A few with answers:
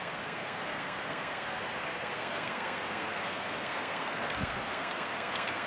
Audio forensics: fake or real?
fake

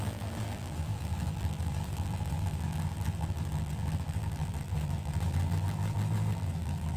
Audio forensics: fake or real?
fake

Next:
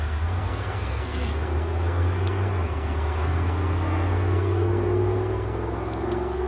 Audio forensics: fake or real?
fake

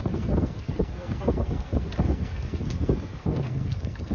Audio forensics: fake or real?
fake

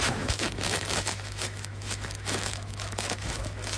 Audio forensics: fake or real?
fake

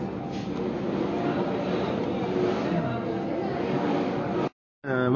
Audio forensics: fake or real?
real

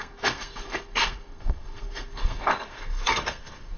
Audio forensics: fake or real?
fake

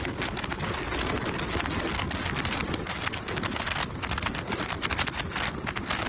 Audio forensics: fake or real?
real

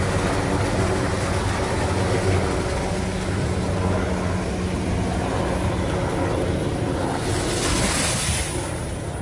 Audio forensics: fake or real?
real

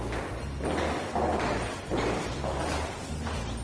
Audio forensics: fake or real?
real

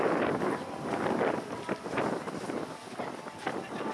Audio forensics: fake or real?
real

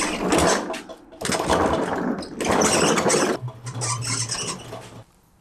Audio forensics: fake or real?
real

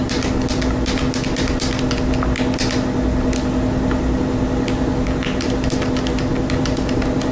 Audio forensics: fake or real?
real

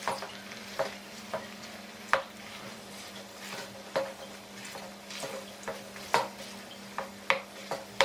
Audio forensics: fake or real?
real